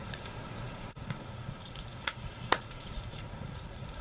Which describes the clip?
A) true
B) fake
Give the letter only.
B